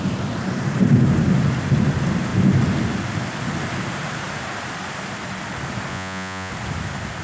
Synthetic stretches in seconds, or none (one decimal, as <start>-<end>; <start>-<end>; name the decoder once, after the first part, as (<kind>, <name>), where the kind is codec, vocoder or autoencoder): 5.9-6.5 (vocoder, Vocos)